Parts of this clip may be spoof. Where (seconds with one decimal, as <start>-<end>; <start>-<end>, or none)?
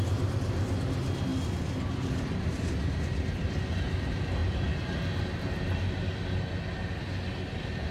none